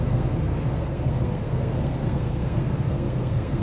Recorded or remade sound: remade